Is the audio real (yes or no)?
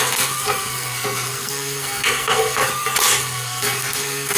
no